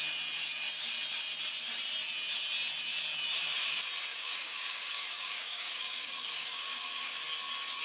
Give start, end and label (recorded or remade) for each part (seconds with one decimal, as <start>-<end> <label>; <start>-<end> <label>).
0.0-4.1 recorded; 4.1-7.2 remade; 7.2-7.8 recorded